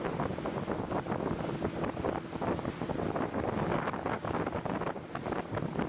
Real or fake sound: real